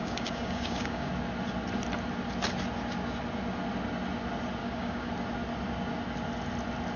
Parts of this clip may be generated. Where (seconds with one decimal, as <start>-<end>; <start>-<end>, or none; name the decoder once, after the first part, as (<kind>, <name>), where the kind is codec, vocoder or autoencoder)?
0.0-1.1 (codec, DAC); 4.6-5.1